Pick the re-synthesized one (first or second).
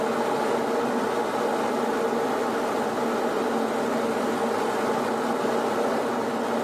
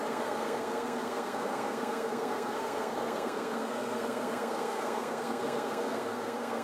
second